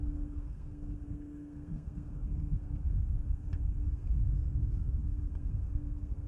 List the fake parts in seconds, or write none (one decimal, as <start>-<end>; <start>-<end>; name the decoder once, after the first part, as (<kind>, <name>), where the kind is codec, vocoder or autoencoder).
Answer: 0.0-6.3 (codec, SNAC)